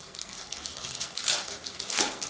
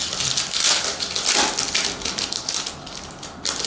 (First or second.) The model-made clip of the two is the first